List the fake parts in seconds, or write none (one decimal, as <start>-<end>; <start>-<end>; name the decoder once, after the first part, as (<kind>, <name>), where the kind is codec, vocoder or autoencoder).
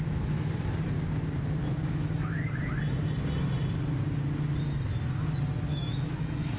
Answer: 1.6-2.5 (autoencoder, DAC-VAE); 5.7-6.6